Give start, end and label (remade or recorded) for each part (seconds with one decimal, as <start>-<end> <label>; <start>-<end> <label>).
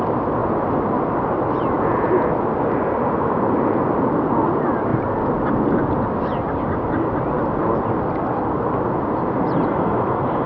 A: 0.0-10.5 recorded